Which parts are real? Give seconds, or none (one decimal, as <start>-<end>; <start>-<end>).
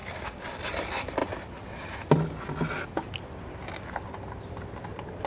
0.6-5.3